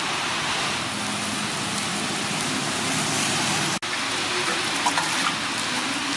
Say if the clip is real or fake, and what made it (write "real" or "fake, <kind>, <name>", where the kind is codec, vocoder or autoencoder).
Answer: real